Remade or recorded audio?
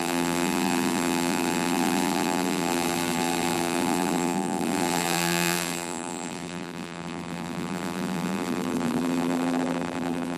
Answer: remade